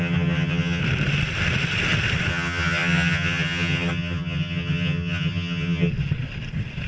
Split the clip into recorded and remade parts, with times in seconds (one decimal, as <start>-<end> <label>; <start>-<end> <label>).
0.0-0.8 remade; 0.8-2.3 recorded; 2.3-5.9 remade; 5.9-6.9 recorded